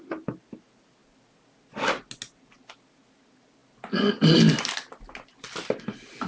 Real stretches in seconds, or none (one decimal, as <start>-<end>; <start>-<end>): 0.0-6.3